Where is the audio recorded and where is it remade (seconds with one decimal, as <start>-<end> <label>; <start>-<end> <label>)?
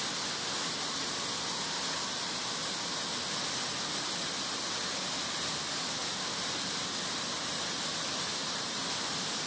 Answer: 0.0-9.5 recorded